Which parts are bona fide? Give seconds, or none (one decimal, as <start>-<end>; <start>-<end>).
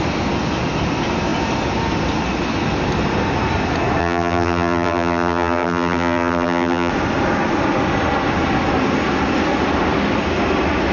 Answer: 0.0-4.0; 6.9-10.9